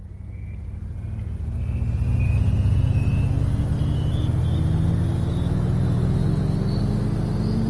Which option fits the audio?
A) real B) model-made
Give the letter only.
A